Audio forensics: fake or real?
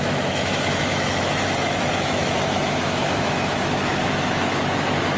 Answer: fake